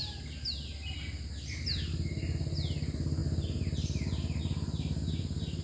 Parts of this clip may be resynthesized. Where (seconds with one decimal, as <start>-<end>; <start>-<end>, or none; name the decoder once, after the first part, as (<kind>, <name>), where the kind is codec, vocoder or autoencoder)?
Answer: none